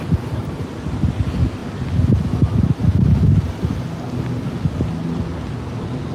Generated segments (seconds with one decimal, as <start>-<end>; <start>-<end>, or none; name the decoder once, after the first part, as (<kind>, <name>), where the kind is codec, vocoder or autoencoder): 0.4-1.1 (vocoder, BigVGAN v2)